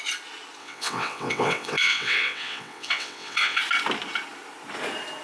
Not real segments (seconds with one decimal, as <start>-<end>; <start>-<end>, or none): 0.6-3.6